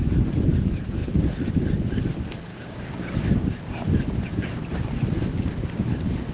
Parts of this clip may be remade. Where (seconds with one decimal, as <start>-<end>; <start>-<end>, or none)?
2.5-3.2